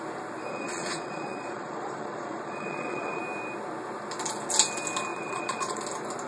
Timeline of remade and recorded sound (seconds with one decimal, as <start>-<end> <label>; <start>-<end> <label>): 0.0-0.5 recorded; 0.5-3.2 remade; 3.2-5.1 recorded; 5.1-5.8 remade; 5.8-6.3 recorded